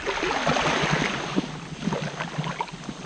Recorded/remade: recorded